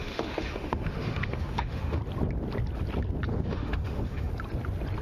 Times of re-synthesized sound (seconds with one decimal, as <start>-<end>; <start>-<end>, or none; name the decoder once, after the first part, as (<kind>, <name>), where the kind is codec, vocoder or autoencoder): 0.0-2.0 (autoencoder, DAC-VAE); 3.3-4.3